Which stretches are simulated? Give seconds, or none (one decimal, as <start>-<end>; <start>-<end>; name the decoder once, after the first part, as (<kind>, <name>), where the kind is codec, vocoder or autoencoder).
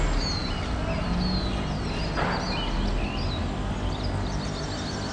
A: none